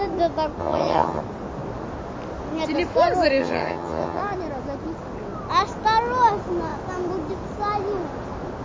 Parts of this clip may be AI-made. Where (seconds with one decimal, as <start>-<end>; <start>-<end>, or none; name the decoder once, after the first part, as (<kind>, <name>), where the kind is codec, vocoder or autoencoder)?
0.6-1.2 (vocoder, HiFi-GAN); 3.4-4.2